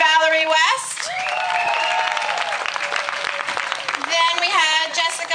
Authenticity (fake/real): fake